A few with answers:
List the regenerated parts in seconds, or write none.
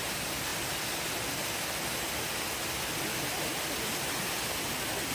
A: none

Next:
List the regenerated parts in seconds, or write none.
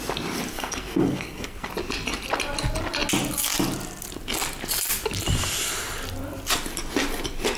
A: 0.5-1.7 (codec, SNAC)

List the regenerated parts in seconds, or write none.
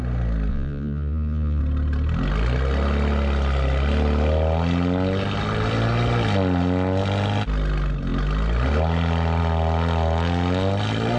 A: 0.5-1.6 (vocoder, Vocos)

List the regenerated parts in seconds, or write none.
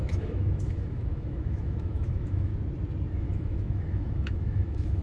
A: 0.0-2.5 (autoencoder, DAC-VAE); 3.1-5.0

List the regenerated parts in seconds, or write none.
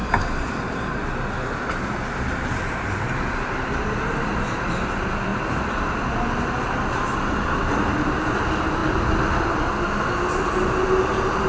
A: none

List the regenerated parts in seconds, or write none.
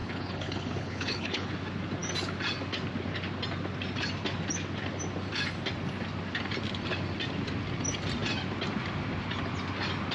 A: 0.0-1.5 (codec, HILCodec)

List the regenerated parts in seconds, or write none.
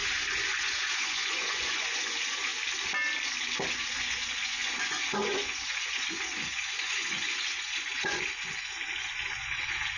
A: 0.0-2.5 (vocoder, Vocos); 3.7-10.0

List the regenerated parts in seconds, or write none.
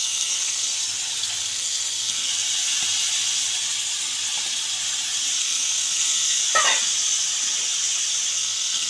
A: 0.0-0.8 (codec, SNAC); 1.4-2.3; 5.4-6.4; 8.3-8.9